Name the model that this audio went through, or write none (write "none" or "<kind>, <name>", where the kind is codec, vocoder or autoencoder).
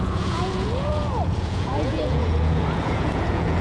vocoder, Vocos